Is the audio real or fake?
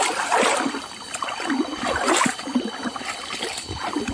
real